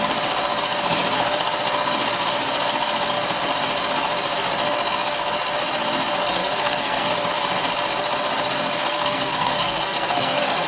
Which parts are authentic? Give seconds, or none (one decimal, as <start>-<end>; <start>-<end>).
0.0-6.4; 7.1-8.9